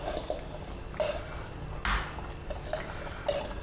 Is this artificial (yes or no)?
no